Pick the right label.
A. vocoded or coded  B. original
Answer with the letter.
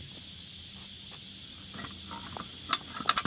B